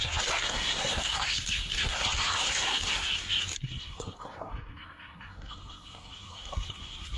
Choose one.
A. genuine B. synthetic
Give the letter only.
B